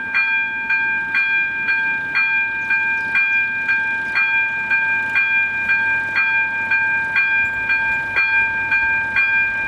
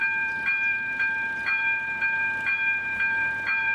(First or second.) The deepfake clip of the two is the second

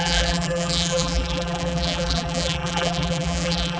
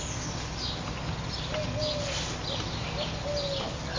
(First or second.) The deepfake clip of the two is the first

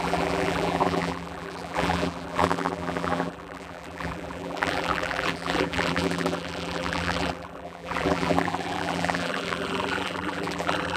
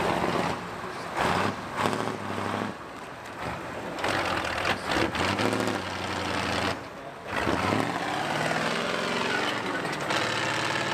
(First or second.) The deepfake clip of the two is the first